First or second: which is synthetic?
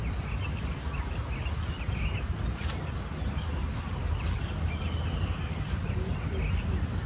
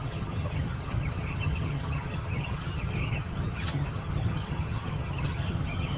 second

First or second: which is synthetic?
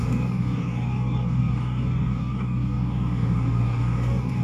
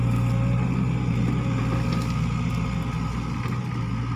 first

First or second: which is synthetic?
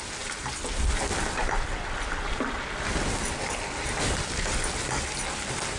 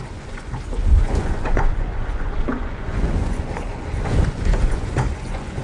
second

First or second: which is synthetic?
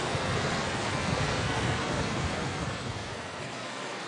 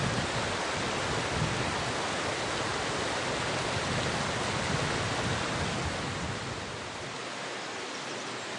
first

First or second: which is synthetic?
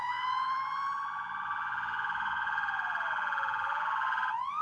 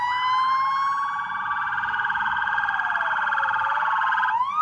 first